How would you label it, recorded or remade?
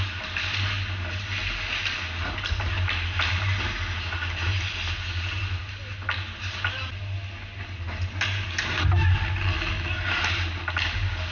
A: recorded